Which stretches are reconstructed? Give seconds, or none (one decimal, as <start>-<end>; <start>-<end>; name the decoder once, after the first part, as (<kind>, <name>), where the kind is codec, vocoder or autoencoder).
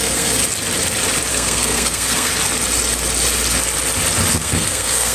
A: 0.0-0.4 (codec, SNAC); 1.3-2.3; 4.3-5.1